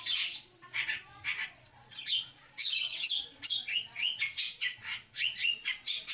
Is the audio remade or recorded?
remade